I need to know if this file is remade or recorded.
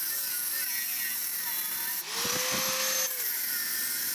recorded